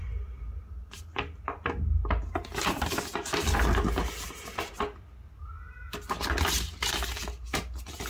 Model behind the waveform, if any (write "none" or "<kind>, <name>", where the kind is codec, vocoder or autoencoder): none